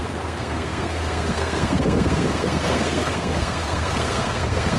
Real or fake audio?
fake